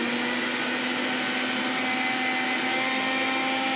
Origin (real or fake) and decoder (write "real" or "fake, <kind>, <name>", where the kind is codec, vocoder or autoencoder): real